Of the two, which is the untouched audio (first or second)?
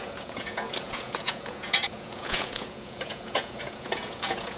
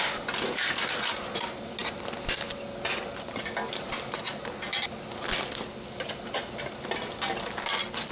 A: second